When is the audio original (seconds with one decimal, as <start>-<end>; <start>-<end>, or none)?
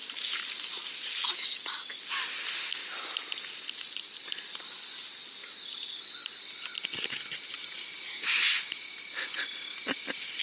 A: 0.0-10.4